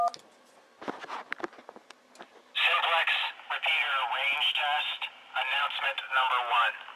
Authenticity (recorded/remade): recorded